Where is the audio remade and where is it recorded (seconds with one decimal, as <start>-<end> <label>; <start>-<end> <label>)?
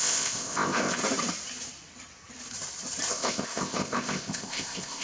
0.0-1.0 remade; 1.0-3.1 recorded; 3.1-5.0 remade